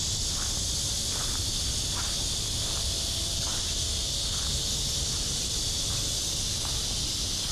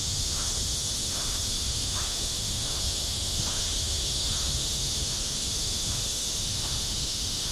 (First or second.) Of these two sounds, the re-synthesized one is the second